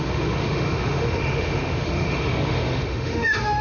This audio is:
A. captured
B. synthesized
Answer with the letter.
B